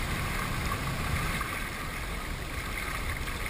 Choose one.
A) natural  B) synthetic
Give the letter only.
A